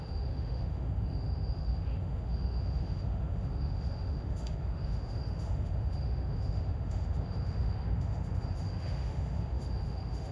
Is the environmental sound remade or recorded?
remade